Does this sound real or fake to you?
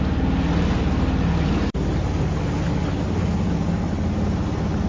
real